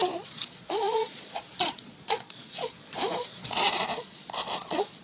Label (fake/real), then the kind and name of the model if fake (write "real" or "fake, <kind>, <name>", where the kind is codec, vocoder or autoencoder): fake, vocoder, Vocos